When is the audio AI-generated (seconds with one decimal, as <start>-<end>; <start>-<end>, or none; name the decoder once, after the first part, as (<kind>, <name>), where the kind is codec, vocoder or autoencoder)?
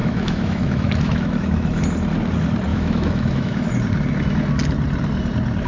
0.0-1.8 (autoencoder, DAC-VAE); 2.7-3.7